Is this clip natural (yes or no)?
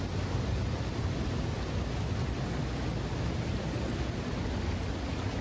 yes